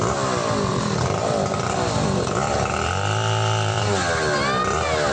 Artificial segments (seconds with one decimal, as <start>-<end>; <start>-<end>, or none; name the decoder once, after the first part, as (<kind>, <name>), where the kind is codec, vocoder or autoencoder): 0.7-3.8 (vocoder, BigVGAN v2)